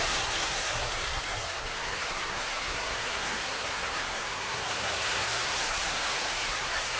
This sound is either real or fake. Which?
fake